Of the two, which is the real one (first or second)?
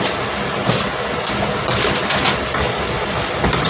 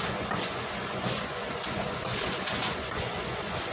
first